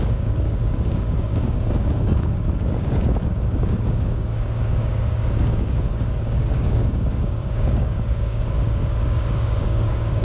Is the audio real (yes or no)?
no